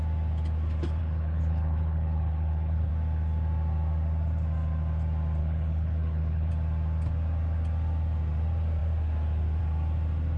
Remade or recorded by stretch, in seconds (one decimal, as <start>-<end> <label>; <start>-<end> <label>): 0.0-1.0 recorded; 1.0-2.9 remade; 2.9-5.4 recorded; 5.4-6.5 remade; 6.5-10.4 recorded